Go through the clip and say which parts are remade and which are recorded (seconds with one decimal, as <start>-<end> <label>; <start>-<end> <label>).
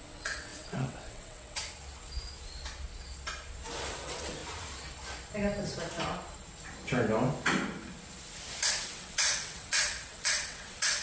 0.0-1.6 remade; 1.6-3.9 recorded; 3.9-4.4 remade; 4.4-8.7 recorded; 8.7-11.0 remade